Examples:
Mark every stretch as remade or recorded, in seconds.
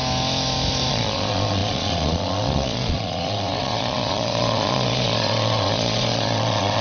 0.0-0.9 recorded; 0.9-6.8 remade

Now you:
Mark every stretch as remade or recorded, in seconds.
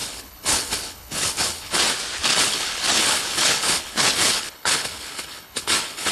0.0-1.8 remade; 1.8-2.3 recorded; 2.3-6.1 remade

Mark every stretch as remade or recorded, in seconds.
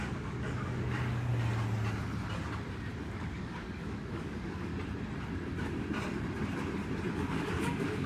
0.0-1.3 remade; 1.3-3.0 recorded; 3.0-4.7 remade; 4.7-7.1 recorded; 7.1-8.1 remade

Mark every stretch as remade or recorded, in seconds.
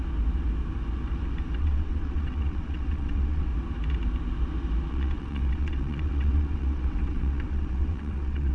0.0-1.6 recorded; 1.6-3.5 remade; 3.5-4.9 recorded; 4.9-8.5 remade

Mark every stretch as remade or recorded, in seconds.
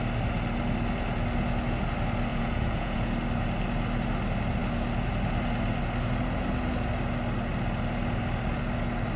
0.0-2.3 recorded; 2.3-3.1 remade; 3.1-9.2 recorded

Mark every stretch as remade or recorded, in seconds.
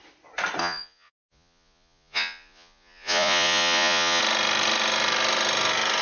0.0-0.6 recorded; 0.6-4.2 remade; 4.2-6.0 recorded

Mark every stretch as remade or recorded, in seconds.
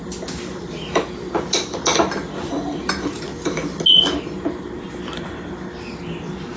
0.0-6.6 recorded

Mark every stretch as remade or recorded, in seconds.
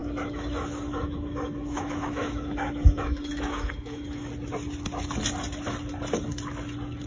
0.0-4.3 remade; 4.3-7.1 recorded